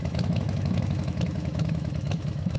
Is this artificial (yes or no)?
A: yes